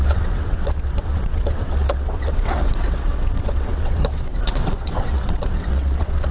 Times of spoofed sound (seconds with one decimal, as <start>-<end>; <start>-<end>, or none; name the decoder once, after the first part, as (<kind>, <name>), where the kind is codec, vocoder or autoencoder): 0.0-6.3 (vocoder, WaveNeXt)